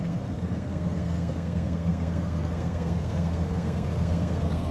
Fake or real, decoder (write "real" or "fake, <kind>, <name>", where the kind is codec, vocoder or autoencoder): fake, codec, SNAC